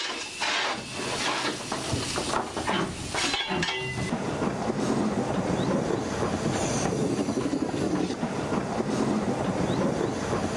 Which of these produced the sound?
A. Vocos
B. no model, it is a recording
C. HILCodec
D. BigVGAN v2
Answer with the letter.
B